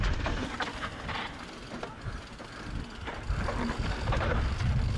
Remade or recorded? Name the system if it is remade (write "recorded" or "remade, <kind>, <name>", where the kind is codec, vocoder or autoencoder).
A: recorded